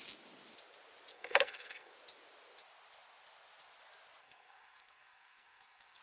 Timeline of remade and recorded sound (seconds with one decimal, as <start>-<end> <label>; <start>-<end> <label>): 0.0-1.1 recorded; 1.1-1.9 remade; 1.9-4.2 recorded; 4.2-6.0 remade

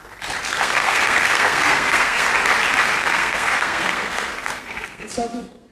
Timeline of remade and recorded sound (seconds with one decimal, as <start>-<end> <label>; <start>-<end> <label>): 0.0-0.5 recorded; 0.5-2.3 remade; 2.3-3.0 recorded; 3.0-5.7 remade

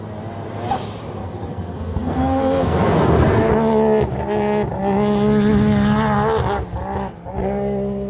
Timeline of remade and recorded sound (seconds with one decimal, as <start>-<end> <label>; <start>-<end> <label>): 0.0-1.2 recorded; 1.2-3.5 remade; 3.5-8.1 recorded

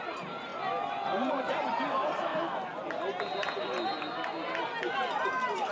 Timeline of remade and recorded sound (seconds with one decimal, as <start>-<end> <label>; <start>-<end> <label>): 0.0-0.5 remade; 0.5-1.3 recorded; 1.3-2.3 remade; 2.3-5.2 recorded; 5.2-5.7 remade

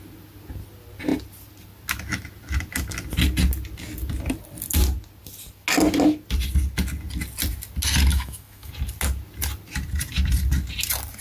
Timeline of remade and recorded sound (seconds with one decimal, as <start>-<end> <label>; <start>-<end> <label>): 0.0-8.1 recorded; 8.1-8.7 remade; 8.7-11.2 recorded

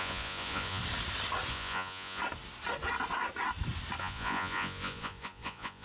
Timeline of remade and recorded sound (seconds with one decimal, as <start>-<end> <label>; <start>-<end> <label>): 0.0-0.8 remade; 0.8-1.5 recorded; 1.5-2.2 remade; 2.2-4.0 recorded; 4.0-5.8 remade